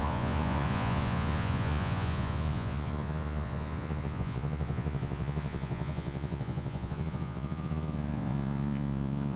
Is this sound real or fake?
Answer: fake